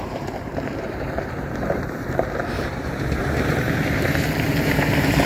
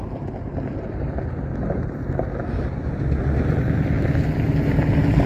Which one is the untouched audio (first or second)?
second